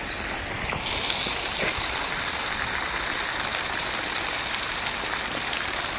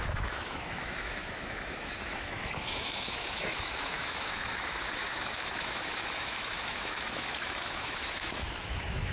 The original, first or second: first